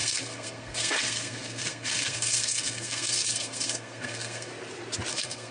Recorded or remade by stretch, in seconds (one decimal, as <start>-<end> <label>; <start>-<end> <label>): 0.0-4.5 remade; 4.5-5.1 recorded; 5.1-5.5 remade